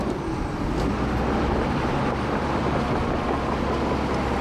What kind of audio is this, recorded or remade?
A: recorded